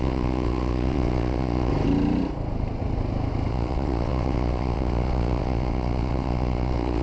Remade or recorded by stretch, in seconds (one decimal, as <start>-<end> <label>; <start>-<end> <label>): 0.0-1.7 remade; 1.7-3.5 recorded; 3.5-7.0 remade

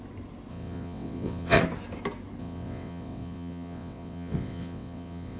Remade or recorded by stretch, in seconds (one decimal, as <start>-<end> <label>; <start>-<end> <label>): 0.0-0.5 recorded; 0.5-1.6 remade; 1.6-2.4 recorded; 2.4-5.4 remade

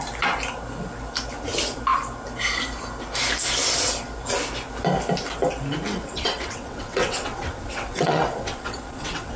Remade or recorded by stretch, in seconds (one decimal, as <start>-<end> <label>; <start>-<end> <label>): 0.0-5.9 recorded; 5.9-9.4 remade

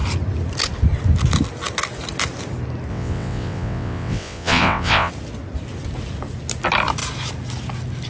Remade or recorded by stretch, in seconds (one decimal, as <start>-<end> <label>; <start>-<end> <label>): 0.0-2.9 recorded; 2.9-5.1 remade; 5.1-8.1 recorded

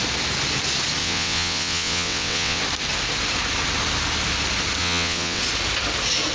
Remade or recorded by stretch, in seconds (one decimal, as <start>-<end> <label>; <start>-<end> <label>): 0.0-1.0 recorded; 1.0-2.6 remade; 2.6-4.8 recorded; 4.8-5.4 remade; 5.4-6.3 recorded

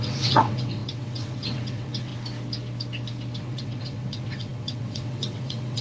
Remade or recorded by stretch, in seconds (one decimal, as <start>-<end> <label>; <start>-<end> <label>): 0.0-2.1 remade; 2.1-3.4 recorded; 3.4-5.8 remade

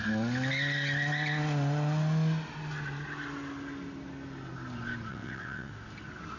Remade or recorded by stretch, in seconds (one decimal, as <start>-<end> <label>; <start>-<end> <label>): 0.0-5.1 recorded; 5.1-5.7 remade; 5.7-6.4 recorded

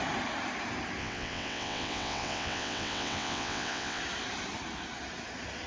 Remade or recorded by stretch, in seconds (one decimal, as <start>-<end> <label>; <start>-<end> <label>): 0.0-1.0 recorded; 1.0-4.0 remade; 4.0-5.7 recorded